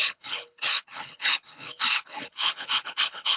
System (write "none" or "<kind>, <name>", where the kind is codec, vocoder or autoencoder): codec, HILCodec